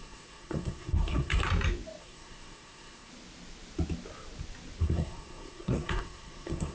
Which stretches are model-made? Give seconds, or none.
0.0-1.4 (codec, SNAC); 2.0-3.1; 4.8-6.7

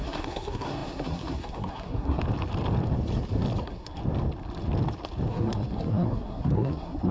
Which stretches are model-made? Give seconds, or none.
0.0-2.2 (codec, SNAC); 3.6-4.0; 5.3-7.1

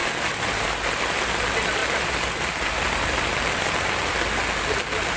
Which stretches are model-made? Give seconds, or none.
none

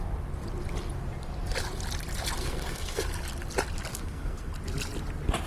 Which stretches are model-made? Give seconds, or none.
2.4-3.1 (codec, SNAC); 3.9-4.5

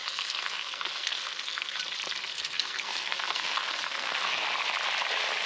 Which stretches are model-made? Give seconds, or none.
0.0-1.8 (codec, SNAC); 2.3-4.4

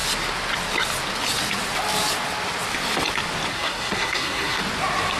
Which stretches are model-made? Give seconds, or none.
3.5-4.6 (codec, SNAC)